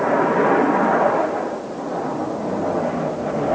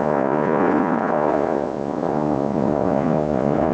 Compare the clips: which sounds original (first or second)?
first